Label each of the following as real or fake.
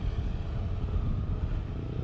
real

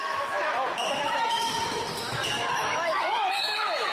fake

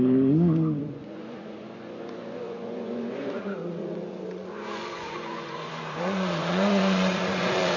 fake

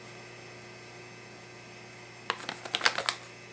real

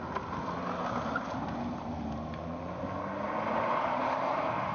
real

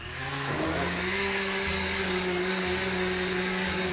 fake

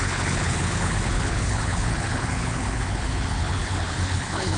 fake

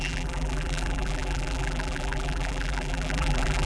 fake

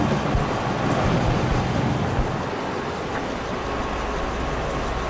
real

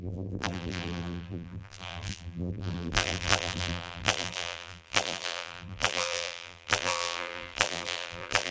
fake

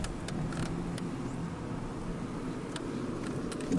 real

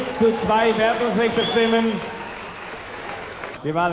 fake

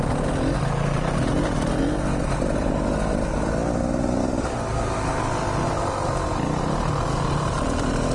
real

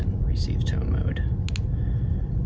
real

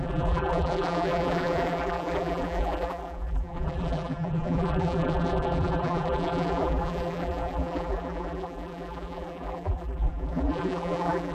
fake